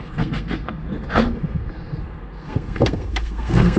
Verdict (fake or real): fake